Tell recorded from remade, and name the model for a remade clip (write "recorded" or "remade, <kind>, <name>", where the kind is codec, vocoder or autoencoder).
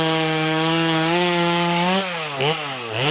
remade, codec, DAC